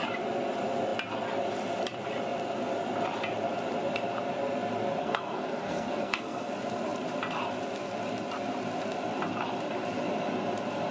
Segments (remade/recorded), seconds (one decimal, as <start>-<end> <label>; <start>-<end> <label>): 0.0-5.0 recorded; 5.0-6.5 remade; 6.5-10.9 recorded